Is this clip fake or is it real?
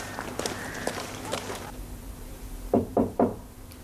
fake